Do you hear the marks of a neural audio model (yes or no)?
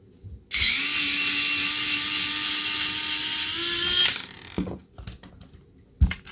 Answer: no